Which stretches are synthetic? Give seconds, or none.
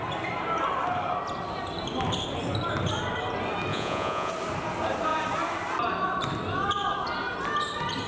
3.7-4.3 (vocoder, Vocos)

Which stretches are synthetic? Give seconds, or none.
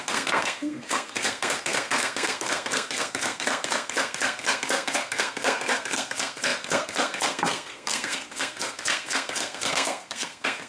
0.0-10.7 (codec, SNAC)